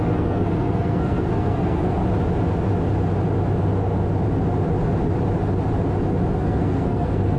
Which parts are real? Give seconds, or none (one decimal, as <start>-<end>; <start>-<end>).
2.0-6.4